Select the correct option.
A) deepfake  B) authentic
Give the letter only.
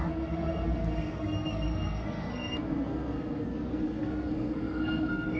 A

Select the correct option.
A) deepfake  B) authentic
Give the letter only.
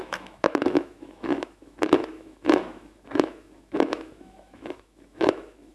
A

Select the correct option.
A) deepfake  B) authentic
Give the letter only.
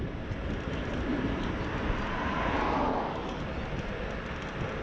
B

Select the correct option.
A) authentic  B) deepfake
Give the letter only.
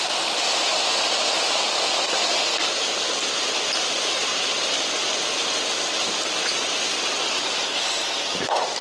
B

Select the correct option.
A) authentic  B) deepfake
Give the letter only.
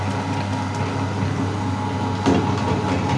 A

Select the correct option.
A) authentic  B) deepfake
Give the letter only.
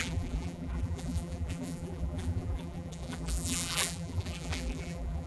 B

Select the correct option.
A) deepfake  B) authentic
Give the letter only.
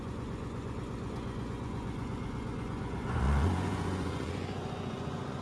A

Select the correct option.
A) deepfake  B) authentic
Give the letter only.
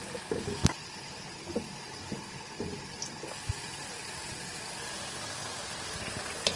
B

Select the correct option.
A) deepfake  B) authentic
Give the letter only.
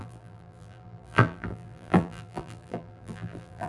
A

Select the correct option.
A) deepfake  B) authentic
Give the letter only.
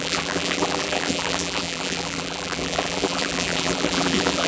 A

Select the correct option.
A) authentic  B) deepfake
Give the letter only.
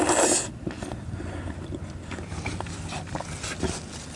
A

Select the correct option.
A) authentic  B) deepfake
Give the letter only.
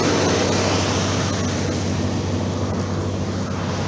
A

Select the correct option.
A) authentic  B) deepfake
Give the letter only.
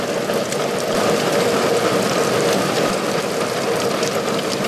A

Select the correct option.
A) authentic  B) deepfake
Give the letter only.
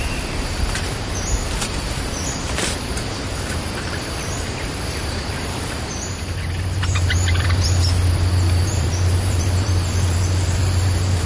B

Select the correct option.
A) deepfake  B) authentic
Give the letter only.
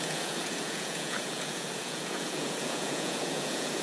A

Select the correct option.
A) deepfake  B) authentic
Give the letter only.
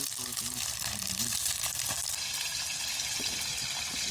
B